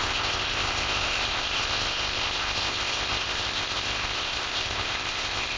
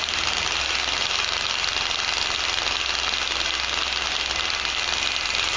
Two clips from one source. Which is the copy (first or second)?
first